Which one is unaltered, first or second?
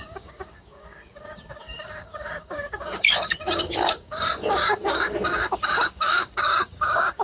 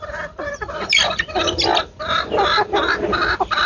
second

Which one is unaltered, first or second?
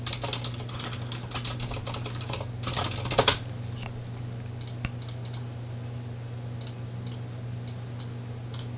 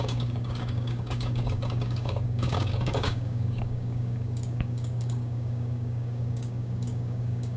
first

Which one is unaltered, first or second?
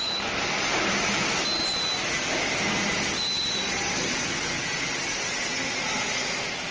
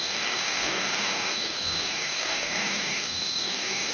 first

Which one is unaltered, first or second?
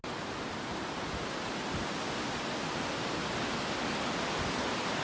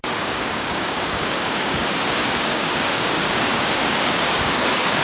first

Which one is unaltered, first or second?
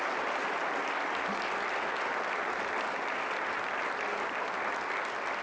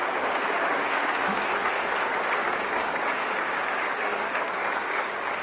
first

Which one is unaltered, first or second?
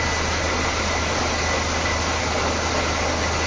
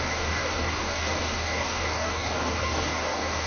first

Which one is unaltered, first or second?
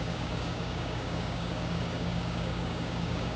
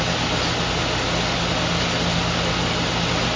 second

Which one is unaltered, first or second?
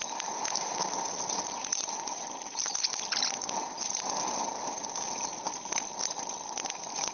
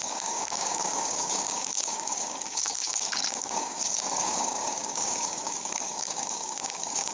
first